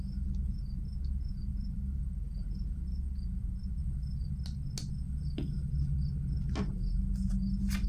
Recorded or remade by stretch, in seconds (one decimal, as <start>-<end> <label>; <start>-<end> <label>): 0.0-1.5 recorded; 1.5-2.0 remade; 2.0-3.8 recorded; 3.8-4.3 remade; 4.3-7.9 recorded